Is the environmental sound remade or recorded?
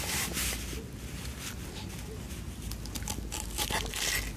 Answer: recorded